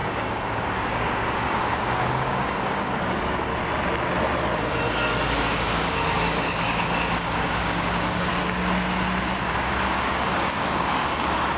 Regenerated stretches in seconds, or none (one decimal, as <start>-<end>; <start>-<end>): 0.0-3.5; 4.9-8.3; 9.4-11.6